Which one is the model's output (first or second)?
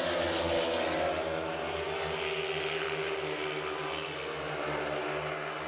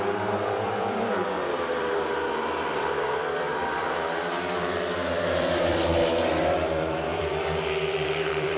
second